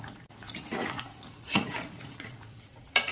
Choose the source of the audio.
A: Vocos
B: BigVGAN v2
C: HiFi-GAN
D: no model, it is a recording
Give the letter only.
A